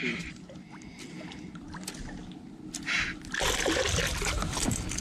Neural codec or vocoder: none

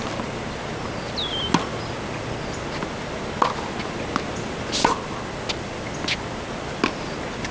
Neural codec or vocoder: none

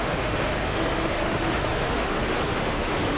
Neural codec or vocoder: autoencoder, DAC-VAE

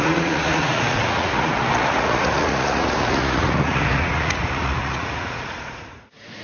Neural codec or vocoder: vocoder, Vocos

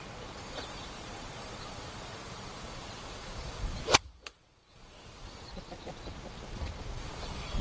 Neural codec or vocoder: vocoder, Vocos